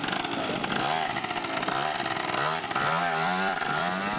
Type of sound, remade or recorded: remade